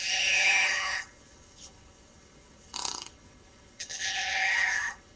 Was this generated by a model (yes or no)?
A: yes